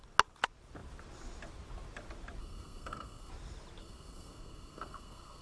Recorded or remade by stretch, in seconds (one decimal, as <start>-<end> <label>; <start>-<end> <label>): 0.0-2.4 recorded; 2.4-3.3 remade; 3.3-3.8 recorded; 3.8-5.4 remade